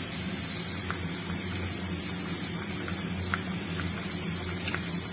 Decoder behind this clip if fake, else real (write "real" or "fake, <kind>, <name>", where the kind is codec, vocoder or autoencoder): real